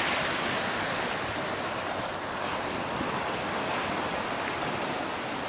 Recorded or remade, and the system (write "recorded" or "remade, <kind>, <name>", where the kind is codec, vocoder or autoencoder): recorded